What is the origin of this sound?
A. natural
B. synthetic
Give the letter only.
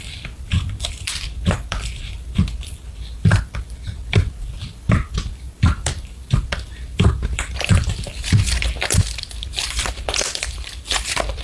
B